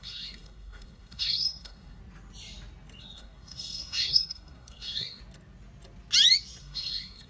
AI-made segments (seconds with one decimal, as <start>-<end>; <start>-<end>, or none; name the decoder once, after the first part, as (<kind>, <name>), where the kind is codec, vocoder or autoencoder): 0.0-2.0 (codec, SNAC); 3.0-5.2; 6.6-7.3